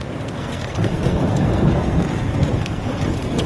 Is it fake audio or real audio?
fake